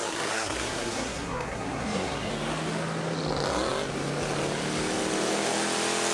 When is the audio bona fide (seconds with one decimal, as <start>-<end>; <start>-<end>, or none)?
2.3-6.1